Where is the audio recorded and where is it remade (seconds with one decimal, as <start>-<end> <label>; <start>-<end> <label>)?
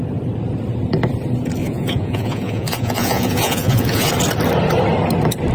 0.0-1.6 recorded; 1.6-4.1 remade; 4.1-5.5 recorded